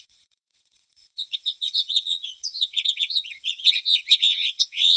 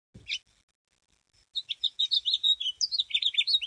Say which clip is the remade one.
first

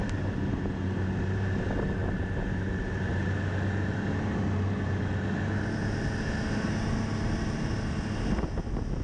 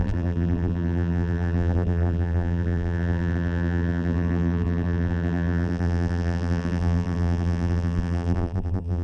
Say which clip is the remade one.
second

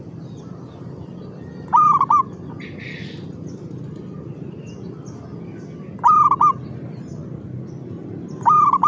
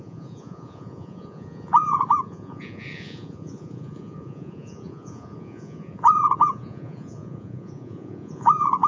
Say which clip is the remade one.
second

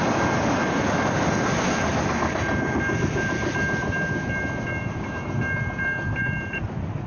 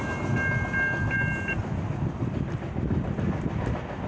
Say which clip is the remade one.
first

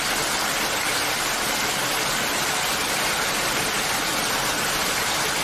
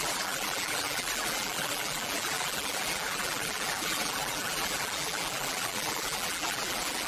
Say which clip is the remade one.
second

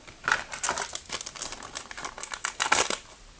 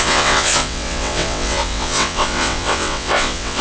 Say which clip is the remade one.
second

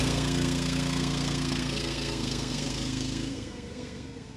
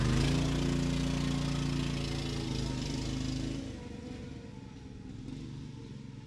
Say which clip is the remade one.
first